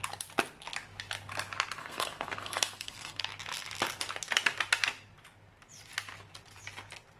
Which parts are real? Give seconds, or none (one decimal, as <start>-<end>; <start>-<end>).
0.0-1.8; 3.2-7.2